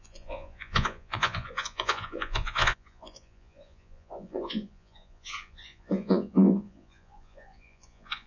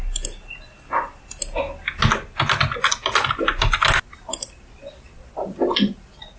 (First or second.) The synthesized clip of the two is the first